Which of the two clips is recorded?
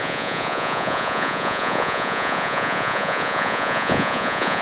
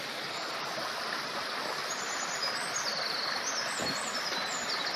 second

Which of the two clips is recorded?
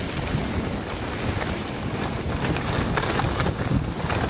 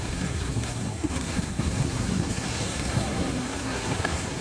first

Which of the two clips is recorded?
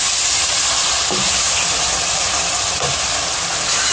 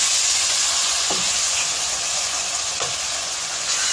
first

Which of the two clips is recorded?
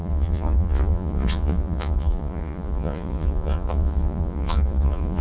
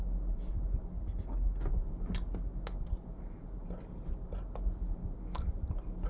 second